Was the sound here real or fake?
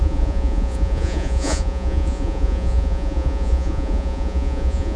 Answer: fake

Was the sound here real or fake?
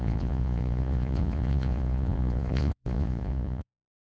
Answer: fake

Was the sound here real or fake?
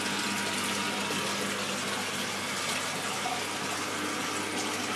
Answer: real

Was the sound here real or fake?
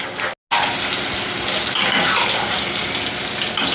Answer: real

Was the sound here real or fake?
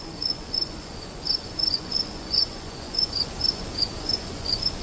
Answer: fake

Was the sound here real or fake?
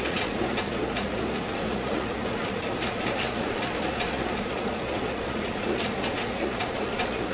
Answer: fake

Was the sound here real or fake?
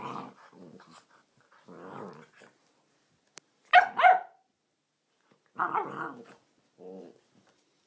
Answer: real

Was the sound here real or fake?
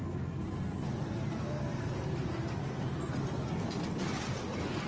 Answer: real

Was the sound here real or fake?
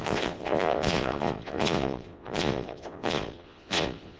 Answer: fake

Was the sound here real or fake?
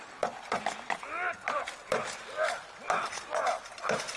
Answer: real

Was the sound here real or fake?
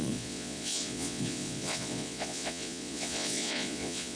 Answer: fake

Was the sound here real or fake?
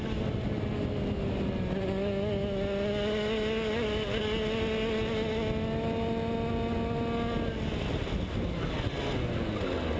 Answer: real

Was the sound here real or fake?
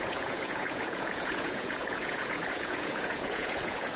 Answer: fake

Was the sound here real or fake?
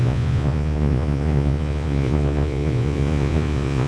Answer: fake